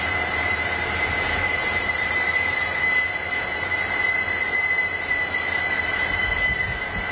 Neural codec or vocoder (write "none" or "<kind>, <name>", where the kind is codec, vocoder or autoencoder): none